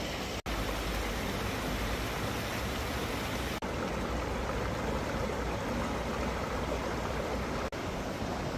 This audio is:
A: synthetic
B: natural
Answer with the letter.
B